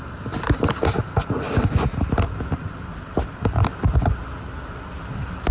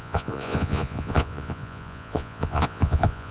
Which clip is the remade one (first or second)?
second